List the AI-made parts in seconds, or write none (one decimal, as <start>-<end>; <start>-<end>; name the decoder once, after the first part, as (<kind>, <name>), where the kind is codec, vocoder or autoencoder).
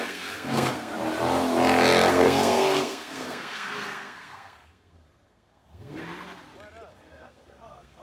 0.0-0.9 (codec, SNAC); 2.1-6.0; 6.9-8.0